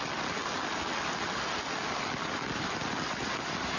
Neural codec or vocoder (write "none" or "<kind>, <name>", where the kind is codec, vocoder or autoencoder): none